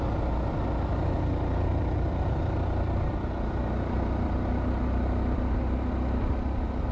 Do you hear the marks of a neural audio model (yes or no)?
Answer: no